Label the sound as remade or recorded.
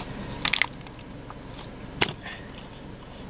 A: recorded